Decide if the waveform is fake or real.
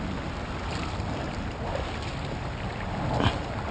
real